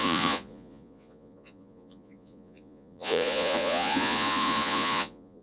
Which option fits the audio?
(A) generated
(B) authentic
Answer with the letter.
A